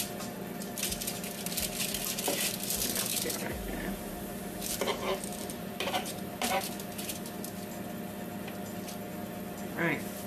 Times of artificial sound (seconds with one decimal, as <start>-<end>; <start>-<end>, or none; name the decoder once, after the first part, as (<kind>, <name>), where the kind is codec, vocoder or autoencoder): 3.1-4.1 (vocoder, BigVGAN v2); 5.3-6.7

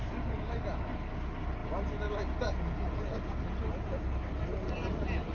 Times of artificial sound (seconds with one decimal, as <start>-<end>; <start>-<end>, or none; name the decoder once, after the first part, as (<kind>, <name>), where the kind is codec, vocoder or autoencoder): none